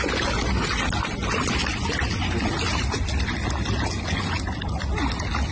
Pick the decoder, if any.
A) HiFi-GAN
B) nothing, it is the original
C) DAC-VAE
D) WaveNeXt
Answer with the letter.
B